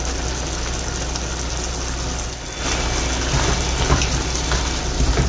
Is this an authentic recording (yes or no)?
yes